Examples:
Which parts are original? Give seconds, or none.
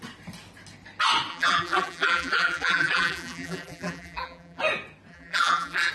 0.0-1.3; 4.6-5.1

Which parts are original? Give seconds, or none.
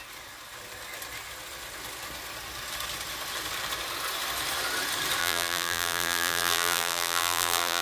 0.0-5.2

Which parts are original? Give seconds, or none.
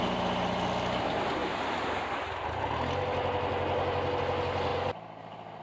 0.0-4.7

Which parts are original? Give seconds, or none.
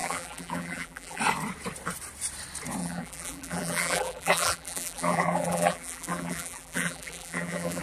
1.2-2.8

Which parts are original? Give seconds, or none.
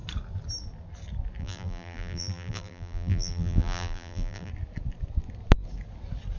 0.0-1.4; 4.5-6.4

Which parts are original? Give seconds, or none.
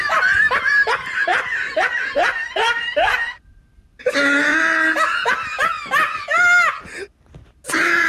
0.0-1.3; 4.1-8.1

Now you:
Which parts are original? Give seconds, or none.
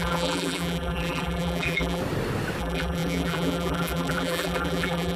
2.0-2.6